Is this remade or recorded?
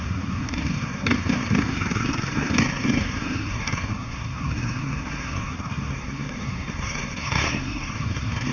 remade